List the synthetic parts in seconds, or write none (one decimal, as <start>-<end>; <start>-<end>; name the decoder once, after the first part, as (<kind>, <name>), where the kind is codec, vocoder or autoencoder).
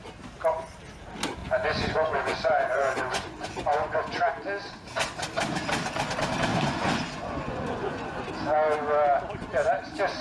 1.4-4.3 (vocoder, Vocos); 6.5-8.3